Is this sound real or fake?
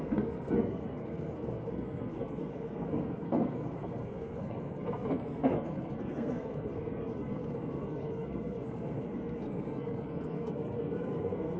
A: fake